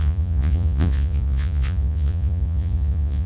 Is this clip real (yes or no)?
no